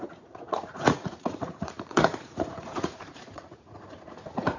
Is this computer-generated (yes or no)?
yes